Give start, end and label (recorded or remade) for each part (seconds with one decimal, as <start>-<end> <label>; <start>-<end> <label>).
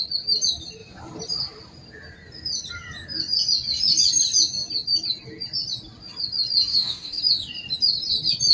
0.0-6.7 recorded; 6.7-7.2 remade; 7.2-8.5 recorded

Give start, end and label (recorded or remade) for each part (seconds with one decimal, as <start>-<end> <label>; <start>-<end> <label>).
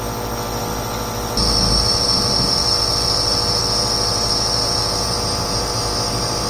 0.0-4.1 recorded; 4.1-5.6 remade; 5.6-6.5 recorded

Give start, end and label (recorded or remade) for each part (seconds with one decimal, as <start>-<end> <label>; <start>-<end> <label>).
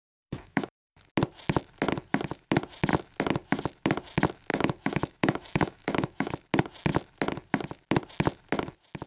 0.0-1.0 remade; 1.0-4.5 recorded; 4.5-6.3 remade; 6.3-9.1 recorded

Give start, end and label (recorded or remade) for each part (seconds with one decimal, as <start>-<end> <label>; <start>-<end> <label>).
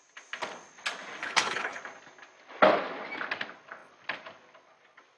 0.0-1.2 recorded; 1.2-1.8 remade; 1.8-5.2 recorded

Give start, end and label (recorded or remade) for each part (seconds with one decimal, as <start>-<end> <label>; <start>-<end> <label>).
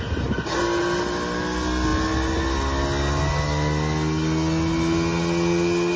0.0-6.0 recorded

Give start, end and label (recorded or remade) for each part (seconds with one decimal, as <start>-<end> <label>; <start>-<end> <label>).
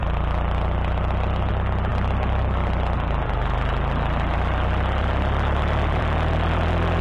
0.0-1.5 remade; 1.5-1.9 recorded; 1.9-6.0 remade; 6.0-7.0 recorded